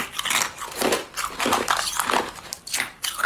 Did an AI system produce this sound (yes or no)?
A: no